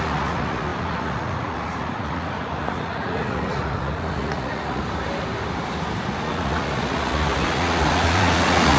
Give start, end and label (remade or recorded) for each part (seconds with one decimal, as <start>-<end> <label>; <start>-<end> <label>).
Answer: 0.0-4.8 remade; 4.8-6.1 recorded; 6.1-8.8 remade